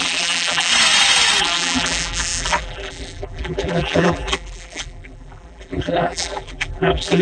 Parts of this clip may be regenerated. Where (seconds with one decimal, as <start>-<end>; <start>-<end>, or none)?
0.0-0.7; 1.4-7.2